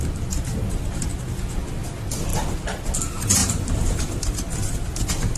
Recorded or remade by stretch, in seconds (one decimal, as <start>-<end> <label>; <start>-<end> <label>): 0.0-3.4 recorded; 3.4-4.7 remade; 4.7-5.4 recorded